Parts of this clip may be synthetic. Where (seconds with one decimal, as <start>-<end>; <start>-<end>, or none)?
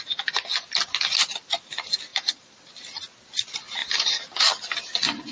2.1-2.7; 3.8-4.4